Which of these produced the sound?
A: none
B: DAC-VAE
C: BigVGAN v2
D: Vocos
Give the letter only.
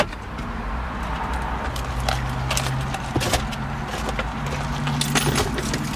A